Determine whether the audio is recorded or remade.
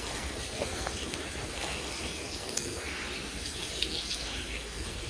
remade